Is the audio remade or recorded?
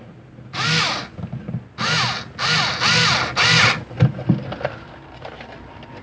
recorded